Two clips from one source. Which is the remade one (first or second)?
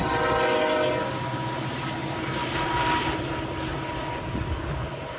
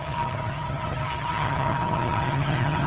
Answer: second